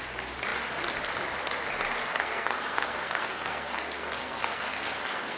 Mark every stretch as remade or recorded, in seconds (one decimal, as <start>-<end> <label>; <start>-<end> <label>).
0.0-2.0 recorded; 2.0-5.4 remade